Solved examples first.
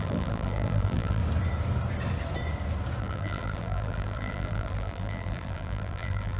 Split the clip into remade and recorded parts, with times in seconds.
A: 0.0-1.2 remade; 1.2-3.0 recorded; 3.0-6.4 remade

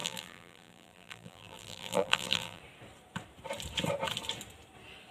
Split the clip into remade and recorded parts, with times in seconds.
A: 0.0-2.6 remade; 2.6-5.1 recorded

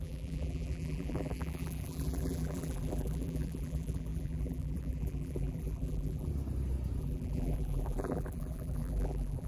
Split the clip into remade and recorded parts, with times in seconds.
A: 0.0-6.3 remade; 6.3-7.0 recorded; 7.0-9.5 remade

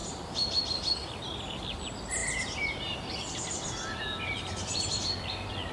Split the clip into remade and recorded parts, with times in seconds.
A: 0.0-0.8 remade; 0.8-5.7 recorded

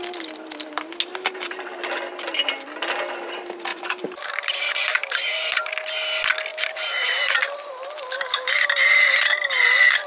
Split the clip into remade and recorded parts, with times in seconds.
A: 0.0-1.1 recorded; 1.1-1.8 remade; 1.8-3.7 recorded; 3.7-5.7 remade; 5.7-6.5 recorded; 6.5-9.2 remade; 9.2-10.1 recorded